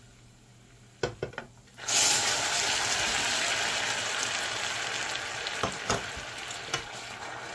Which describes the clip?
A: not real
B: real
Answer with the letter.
B